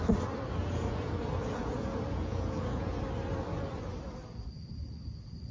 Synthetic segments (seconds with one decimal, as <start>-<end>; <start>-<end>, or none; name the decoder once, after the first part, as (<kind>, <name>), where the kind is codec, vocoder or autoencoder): 0.6-1.2 (vocoder, Vocos); 1.6-3.0